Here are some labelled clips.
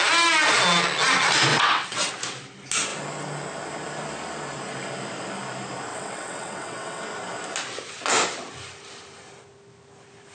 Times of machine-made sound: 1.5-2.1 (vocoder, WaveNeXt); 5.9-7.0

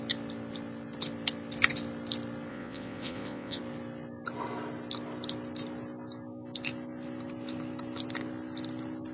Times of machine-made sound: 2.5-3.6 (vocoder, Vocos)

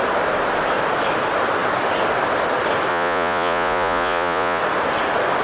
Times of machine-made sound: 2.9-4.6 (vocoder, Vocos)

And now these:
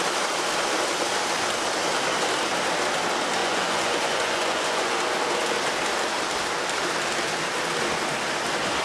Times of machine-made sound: 3.4-4.9 (vocoder, Vocos)

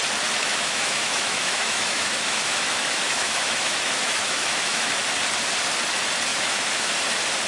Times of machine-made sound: 0.4-4.9 (autoencoder, DAC-VAE); 6.3-6.9